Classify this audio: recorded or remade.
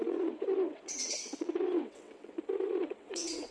remade